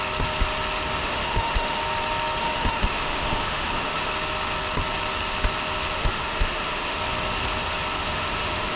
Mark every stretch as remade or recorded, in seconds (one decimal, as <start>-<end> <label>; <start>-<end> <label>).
0.0-1.0 recorded; 1.0-1.8 remade; 1.8-2.4 recorded; 2.4-4.1 remade; 4.1-6.0 recorded; 6.0-7.0 remade; 7.0-8.0 recorded; 8.0-8.8 remade